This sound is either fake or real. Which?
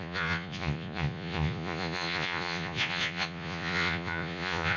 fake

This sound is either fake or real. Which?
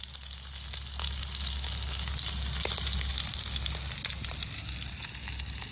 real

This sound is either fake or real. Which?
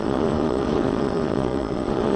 fake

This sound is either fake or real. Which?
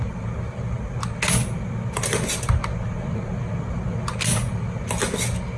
real